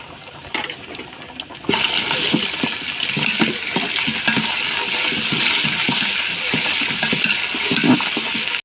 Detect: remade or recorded recorded